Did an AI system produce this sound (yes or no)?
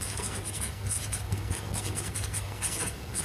yes